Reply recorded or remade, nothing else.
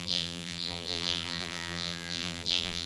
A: remade